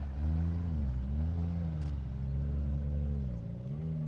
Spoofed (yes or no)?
no